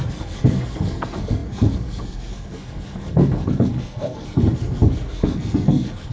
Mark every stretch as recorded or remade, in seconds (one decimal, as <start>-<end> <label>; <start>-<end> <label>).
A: 0.0-6.1 remade